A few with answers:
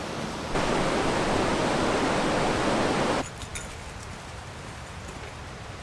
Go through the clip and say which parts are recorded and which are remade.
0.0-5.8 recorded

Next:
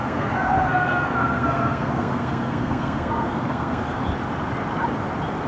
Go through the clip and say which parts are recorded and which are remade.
0.0-4.0 remade; 4.0-5.5 recorded

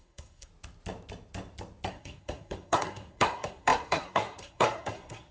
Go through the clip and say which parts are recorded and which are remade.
0.0-0.5 remade; 0.5-1.9 recorded; 1.9-5.3 remade

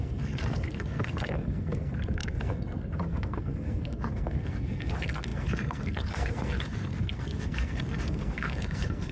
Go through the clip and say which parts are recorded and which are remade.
0.0-9.1 remade

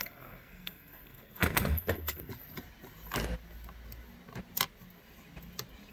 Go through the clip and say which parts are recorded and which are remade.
0.0-2.3 remade; 2.3-5.9 recorded